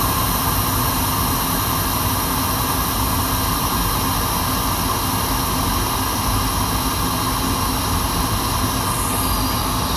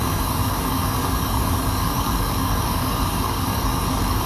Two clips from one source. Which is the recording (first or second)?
first